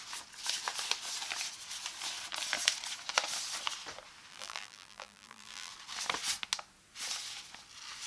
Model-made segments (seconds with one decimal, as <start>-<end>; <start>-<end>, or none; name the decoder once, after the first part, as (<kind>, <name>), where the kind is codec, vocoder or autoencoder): 4.3-5.7 (vocoder, BigVGAN v2)